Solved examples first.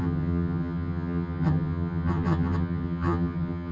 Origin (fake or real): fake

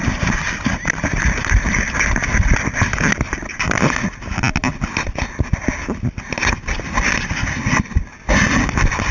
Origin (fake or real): real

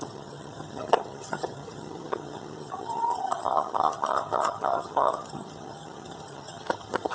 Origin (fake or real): fake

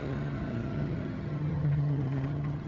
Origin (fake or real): fake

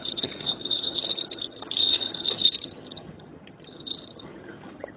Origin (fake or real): fake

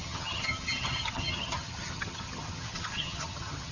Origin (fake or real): fake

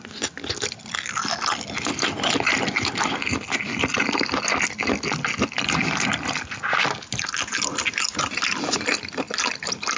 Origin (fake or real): real